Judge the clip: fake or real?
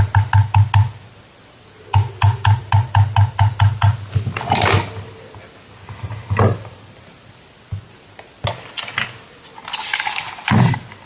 real